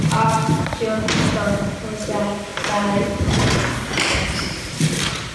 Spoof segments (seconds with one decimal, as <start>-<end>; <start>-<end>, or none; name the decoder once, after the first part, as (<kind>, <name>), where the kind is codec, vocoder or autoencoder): 2.5-3.1 (vocoder, BigVGAN v2); 3.9-4.8